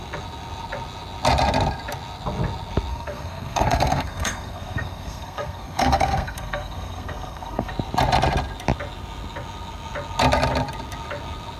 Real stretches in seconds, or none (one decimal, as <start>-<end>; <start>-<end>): 0.0-2.9; 7.7-11.6